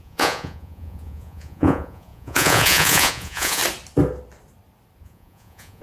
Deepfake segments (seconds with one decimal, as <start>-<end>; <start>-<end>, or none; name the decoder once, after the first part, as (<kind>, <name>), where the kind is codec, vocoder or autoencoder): 0.0-3.6 (vocoder, Vocos); 5.0-5.8